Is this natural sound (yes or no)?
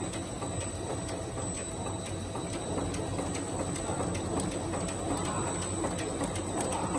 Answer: yes